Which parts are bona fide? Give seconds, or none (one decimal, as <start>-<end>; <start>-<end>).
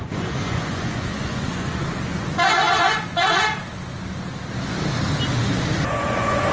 3.4-5.9